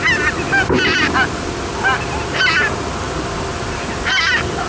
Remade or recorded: recorded